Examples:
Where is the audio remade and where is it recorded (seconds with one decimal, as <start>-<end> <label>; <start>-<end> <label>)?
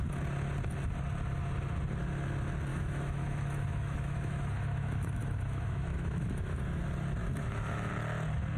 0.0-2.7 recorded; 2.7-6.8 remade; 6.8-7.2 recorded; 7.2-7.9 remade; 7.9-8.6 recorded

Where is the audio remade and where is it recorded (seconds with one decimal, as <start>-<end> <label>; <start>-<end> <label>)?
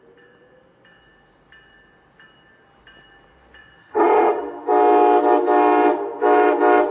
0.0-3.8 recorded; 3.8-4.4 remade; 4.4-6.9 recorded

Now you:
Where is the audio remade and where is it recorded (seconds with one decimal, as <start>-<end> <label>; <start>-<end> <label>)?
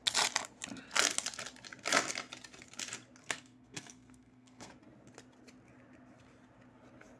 0.0-3.2 recorded; 3.2-4.7 remade; 4.7-7.2 recorded